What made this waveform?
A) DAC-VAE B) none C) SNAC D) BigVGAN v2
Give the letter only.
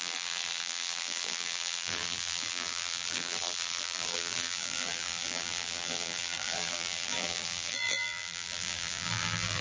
D